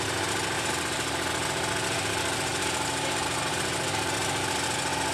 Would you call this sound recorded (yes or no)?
yes